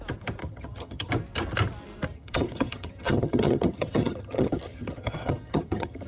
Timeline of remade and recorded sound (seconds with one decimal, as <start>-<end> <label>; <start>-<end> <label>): 0.0-0.4 recorded; 0.4-1.1 remade; 1.1-2.1 recorded; 2.1-6.1 remade